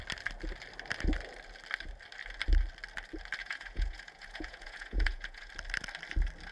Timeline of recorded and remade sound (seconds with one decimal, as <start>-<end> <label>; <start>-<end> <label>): 0.0-3.4 recorded; 3.4-5.5 remade; 5.5-6.5 recorded